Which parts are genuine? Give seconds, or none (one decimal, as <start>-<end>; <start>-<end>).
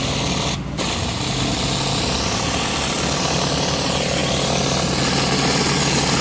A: 0.0-6.2